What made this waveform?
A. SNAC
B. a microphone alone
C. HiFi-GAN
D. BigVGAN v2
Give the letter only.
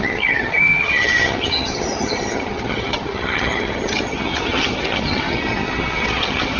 C